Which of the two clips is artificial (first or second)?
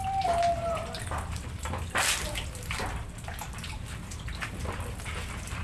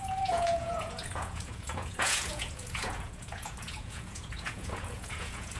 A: second